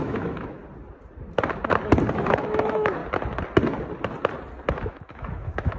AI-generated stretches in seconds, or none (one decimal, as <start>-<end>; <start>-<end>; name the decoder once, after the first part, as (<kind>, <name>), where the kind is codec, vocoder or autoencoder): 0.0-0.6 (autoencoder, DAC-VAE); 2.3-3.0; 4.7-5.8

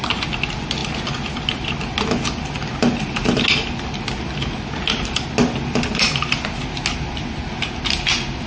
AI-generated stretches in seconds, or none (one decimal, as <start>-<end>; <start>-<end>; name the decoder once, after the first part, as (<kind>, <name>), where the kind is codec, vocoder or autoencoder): none

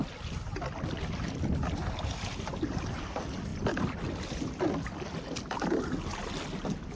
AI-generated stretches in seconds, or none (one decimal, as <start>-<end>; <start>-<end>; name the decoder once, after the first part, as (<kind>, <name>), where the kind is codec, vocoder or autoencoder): 3.5-4.7 (vocoder, BigVGAN v2)